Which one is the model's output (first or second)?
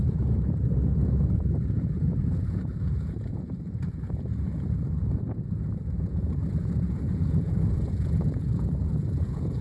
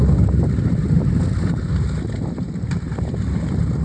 first